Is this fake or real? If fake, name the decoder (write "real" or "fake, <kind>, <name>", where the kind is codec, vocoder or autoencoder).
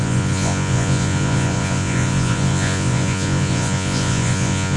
fake, vocoder, Vocos